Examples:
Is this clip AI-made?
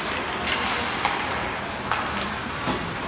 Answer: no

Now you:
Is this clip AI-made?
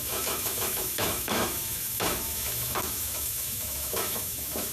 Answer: yes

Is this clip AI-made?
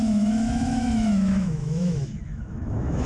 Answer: yes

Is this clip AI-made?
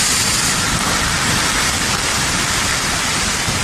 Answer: no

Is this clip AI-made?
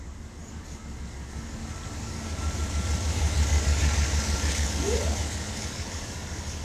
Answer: yes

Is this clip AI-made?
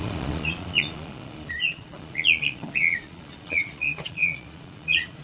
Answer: yes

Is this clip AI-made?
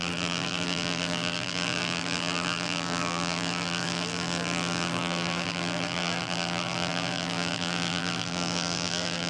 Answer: yes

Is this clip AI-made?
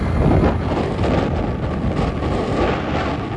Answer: no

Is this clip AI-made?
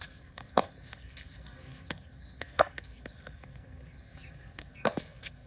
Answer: yes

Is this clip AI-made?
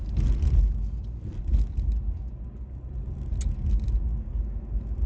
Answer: no